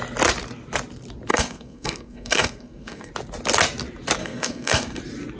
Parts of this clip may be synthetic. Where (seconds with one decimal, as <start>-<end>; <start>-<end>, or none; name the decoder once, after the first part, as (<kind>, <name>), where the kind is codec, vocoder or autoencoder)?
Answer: 1.3-3.1 (codec, SNAC); 4.2-5.0